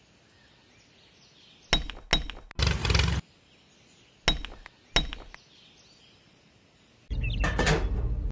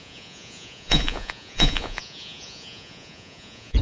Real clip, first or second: first